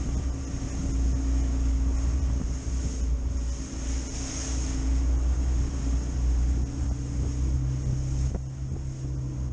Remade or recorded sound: recorded